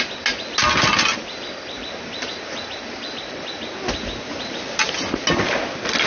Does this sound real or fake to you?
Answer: real